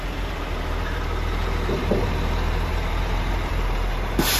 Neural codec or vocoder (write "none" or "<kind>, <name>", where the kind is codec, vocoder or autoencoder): vocoder, BigVGAN v2